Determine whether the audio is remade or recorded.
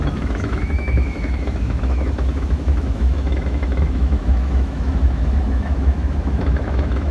remade